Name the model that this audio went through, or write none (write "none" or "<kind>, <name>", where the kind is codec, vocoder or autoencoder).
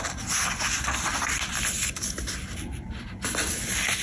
none